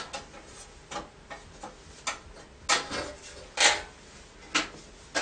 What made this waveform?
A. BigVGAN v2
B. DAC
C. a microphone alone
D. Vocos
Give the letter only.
C